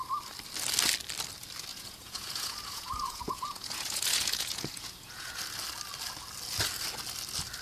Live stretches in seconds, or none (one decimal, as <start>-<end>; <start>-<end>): 0.0-1.7; 5.4-7.6